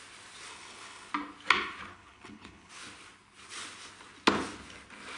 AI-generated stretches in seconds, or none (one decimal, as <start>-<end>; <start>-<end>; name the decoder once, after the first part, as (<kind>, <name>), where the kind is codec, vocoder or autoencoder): 0.5-1.1 (codec, HILCodec); 1.9-2.7